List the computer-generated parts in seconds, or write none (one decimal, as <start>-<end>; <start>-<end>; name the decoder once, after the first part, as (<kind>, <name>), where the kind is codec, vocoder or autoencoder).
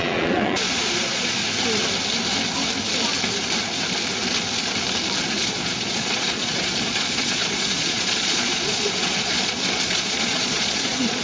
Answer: 0.0-1.4 (vocoder, Vocos); 5.2-11.2